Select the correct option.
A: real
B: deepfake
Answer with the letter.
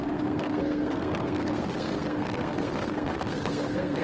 B